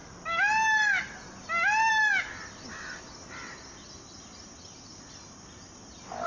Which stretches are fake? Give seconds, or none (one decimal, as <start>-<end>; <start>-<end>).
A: none